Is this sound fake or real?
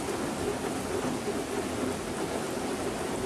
real